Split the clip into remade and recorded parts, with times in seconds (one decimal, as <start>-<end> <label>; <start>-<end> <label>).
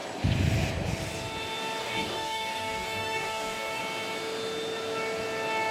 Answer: 0.0-1.8 recorded; 1.8-3.8 remade; 3.8-5.7 recorded